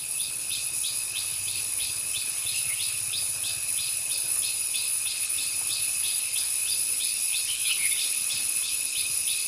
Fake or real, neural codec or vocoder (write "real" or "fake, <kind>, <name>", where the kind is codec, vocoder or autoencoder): fake, codec, HILCodec